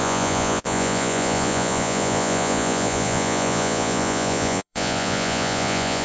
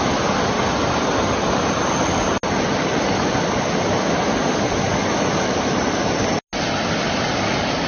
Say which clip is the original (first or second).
second